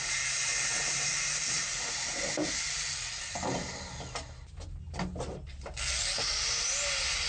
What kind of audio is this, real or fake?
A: real